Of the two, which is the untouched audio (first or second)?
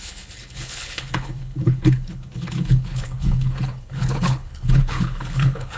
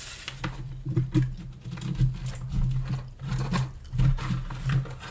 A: second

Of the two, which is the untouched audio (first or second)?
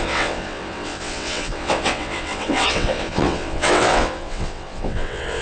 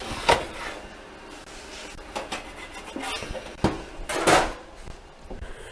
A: second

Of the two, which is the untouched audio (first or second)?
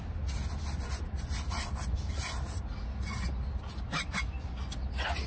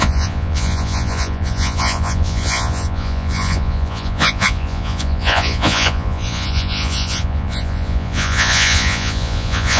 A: first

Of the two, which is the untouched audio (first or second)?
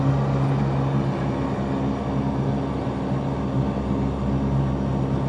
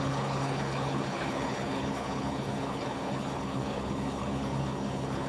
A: first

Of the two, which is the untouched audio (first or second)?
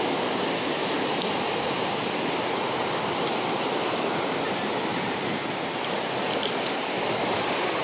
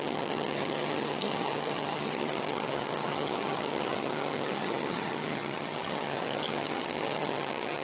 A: first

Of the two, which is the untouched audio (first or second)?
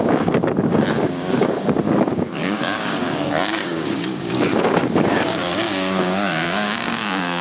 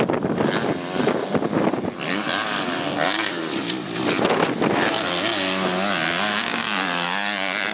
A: second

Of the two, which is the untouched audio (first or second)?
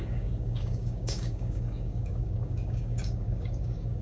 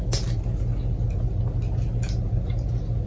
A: second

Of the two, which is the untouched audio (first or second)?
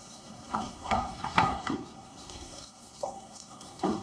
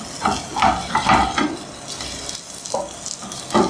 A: second